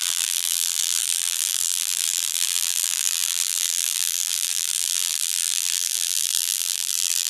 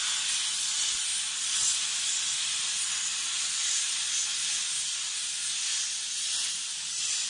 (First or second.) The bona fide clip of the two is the second